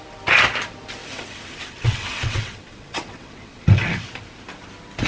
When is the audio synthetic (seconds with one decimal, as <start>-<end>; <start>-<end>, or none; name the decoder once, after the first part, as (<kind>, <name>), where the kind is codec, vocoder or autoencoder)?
1.0-4.1 (vocoder, WaveNeXt)